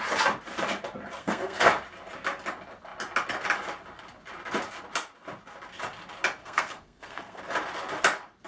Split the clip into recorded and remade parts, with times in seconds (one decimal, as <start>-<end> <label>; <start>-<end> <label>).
0.0-1.2 recorded; 1.2-1.7 remade; 1.7-6.4 recorded; 6.4-7.4 remade; 7.4-8.5 recorded